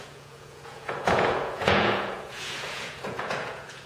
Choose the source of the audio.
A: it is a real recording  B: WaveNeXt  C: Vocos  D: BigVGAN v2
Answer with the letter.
C